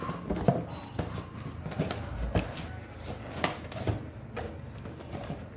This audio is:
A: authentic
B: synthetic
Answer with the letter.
A